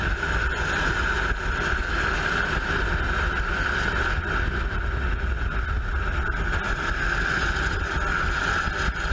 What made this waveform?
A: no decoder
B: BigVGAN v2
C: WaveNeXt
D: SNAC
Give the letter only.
A